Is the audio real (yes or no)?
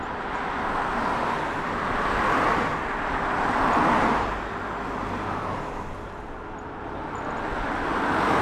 yes